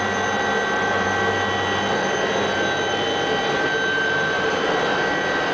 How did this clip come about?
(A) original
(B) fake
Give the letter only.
A